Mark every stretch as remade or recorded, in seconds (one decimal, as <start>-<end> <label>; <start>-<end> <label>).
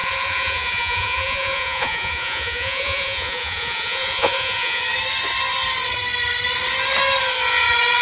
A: 0.0-4.8 remade; 4.8-8.0 recorded